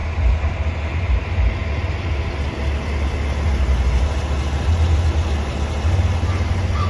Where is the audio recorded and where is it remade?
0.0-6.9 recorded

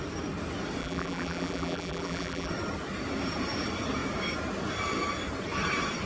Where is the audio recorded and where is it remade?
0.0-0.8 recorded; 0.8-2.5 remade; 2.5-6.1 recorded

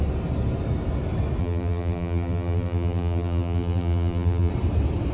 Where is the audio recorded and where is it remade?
0.0-1.4 recorded; 1.4-4.5 remade; 4.5-5.1 recorded